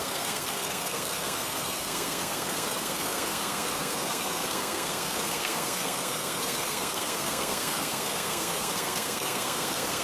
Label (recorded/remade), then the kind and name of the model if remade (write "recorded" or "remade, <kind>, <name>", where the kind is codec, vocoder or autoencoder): remade, codec, SNAC